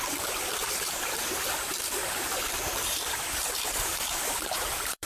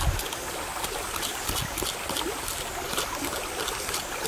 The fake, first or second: first